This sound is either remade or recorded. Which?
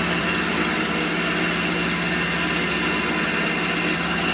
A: recorded